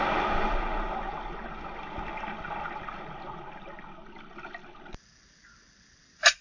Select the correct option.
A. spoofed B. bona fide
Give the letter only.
B